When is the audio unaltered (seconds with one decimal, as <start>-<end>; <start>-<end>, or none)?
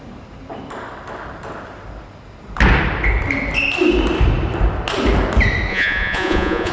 0.0-5.7